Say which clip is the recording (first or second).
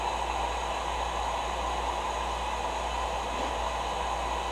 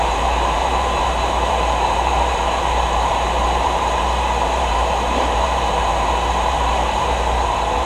first